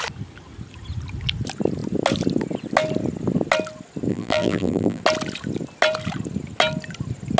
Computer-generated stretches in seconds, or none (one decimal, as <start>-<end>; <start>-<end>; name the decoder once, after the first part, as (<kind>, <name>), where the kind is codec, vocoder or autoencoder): 4.1-5.0 (vocoder, BigVGAN v2)